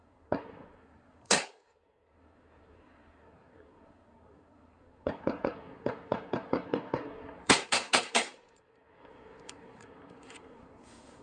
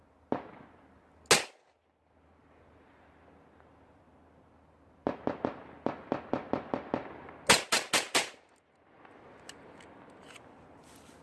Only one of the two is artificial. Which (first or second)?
first